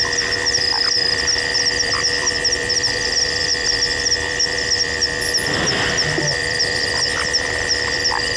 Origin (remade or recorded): remade